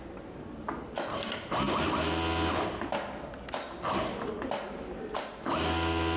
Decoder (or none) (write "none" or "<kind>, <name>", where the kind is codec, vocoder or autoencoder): none